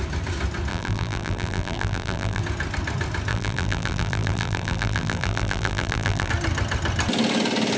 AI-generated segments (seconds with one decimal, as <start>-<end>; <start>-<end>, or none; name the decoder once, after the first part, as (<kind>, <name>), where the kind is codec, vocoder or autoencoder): 0.7-2.4 (vocoder, BigVGAN v2); 3.3-6.3